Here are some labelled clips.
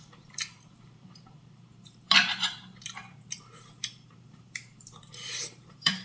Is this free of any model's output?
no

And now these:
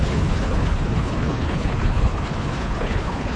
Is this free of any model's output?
no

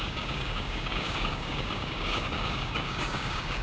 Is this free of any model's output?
no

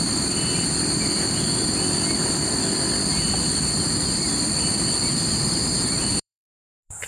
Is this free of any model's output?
no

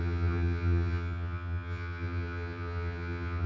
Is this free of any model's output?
no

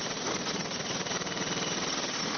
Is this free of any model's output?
yes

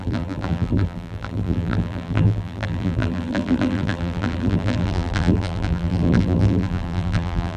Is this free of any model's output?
no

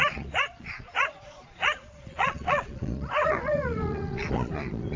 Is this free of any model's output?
no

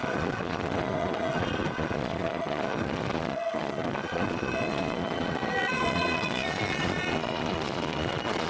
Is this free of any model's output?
no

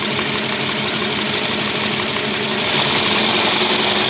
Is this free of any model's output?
yes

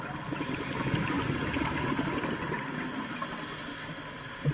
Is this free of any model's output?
yes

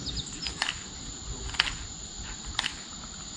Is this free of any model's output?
yes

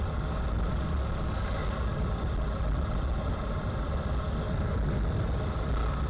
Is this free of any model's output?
yes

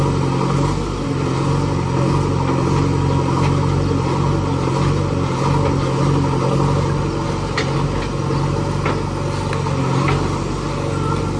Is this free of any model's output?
yes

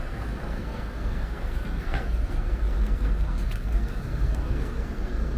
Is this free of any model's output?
no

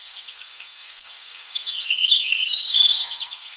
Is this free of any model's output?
no